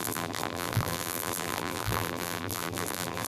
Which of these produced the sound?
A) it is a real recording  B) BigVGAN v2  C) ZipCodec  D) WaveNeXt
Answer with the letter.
B